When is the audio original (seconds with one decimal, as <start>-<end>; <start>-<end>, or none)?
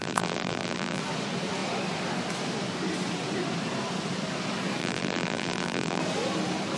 1.0-4.8; 6.0-6.8